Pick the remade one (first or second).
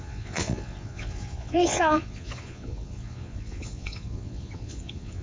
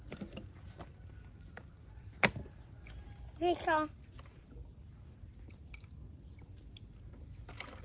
first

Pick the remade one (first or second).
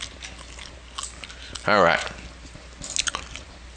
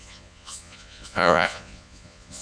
second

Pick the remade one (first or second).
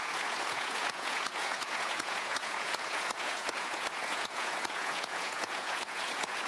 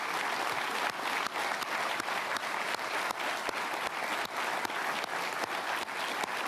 first